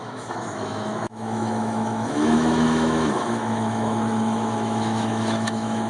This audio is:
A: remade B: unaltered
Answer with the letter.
A